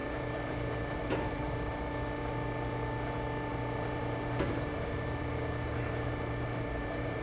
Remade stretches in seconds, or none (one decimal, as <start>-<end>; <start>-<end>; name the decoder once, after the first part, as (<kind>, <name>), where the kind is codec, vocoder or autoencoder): 0.0-1.7 (vocoder, BigVGAN v2); 3.5-7.2